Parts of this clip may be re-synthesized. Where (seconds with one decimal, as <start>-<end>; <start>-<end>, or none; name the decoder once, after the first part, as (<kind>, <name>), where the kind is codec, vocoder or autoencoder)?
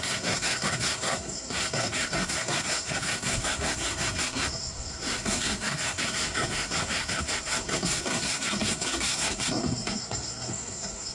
0.0-11.1 (codec, SNAC)